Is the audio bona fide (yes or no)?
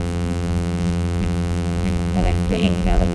no